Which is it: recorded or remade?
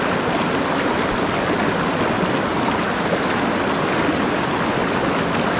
recorded